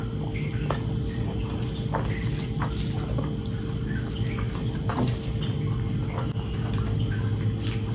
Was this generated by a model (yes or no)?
no